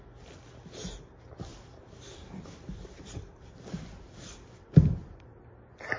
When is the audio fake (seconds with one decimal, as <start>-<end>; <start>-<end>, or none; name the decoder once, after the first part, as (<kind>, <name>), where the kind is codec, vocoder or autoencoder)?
1.5-4.6 (vocoder, BigVGAN v2)